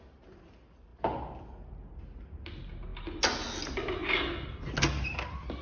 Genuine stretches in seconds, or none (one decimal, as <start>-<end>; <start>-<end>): 0.0-5.6